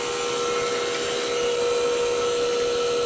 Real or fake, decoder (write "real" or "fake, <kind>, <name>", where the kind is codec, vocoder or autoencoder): real